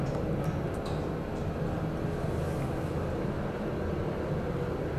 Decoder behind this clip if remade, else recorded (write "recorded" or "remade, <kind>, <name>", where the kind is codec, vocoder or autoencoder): recorded